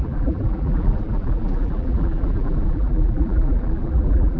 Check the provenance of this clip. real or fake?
fake